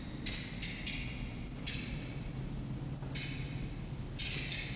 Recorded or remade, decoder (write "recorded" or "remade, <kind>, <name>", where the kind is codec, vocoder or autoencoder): recorded